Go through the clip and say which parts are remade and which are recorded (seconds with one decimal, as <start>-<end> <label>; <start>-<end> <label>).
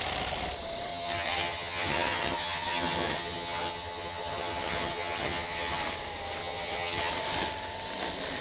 0.0-0.9 recorded; 0.9-5.8 remade; 5.8-6.4 recorded; 6.4-7.1 remade; 7.1-8.4 recorded